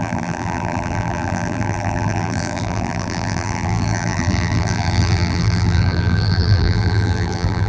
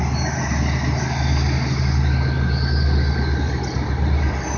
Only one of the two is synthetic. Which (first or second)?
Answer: first